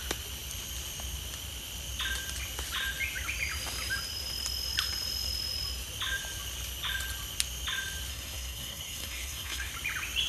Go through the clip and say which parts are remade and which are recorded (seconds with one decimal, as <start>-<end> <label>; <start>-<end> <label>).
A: 0.0-8.1 recorded; 8.1-9.7 remade; 9.7-10.3 recorded